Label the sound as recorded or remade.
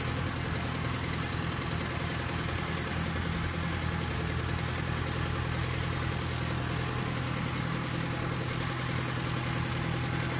recorded